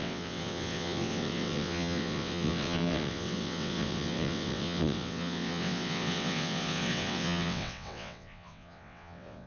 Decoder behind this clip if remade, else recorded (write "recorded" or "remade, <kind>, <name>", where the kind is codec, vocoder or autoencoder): remade, vocoder, WaveNeXt